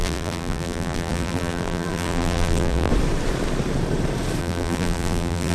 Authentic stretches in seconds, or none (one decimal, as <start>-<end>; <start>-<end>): 2.9-4.4

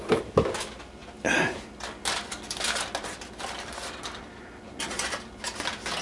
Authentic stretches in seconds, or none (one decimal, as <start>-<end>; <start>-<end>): 0.0-6.0

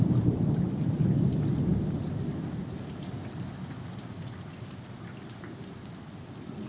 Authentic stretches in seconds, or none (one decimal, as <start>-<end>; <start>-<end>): 0.0-6.7

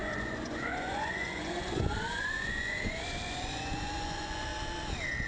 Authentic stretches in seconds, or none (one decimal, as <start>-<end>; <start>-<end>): 4.5-5.3

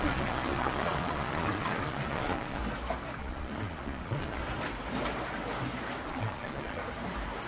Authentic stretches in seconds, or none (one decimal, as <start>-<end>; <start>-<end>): 2.6-3.2; 4.4-6.1; 6.8-7.5

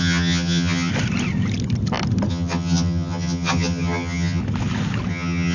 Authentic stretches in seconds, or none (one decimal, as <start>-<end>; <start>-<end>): 0.9-2.3; 4.4-5.1